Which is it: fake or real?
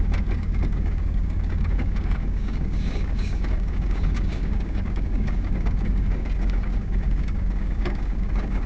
fake